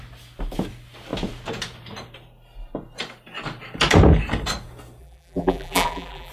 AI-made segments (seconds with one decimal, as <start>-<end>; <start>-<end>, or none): 5.0-6.3